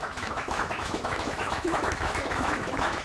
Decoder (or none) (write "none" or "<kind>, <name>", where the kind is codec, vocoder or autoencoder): autoencoder, DAC-VAE